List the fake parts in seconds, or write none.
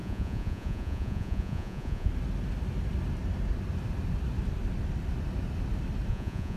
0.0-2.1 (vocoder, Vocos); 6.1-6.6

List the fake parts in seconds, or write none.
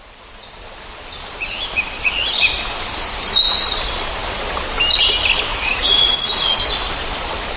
5.5-6.6 (vocoder, Vocos)